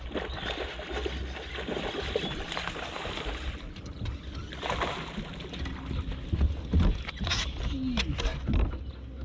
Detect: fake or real real